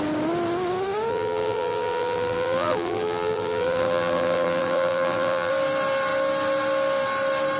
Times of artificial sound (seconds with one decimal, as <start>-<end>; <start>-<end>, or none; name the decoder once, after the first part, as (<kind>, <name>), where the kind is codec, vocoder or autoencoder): 1.1-5.5 (vocoder, BigVGAN v2)